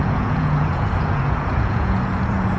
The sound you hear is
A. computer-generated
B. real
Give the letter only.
A